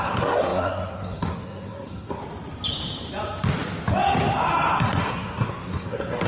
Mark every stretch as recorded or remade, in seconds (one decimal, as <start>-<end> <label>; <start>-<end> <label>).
0.0-2.2 remade; 2.2-4.8 recorded; 4.8-6.3 remade